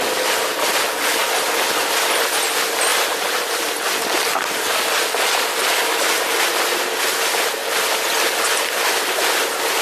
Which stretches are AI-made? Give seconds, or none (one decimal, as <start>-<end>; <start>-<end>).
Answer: none